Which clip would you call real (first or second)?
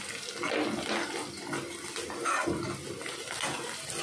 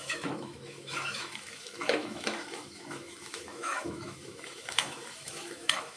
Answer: first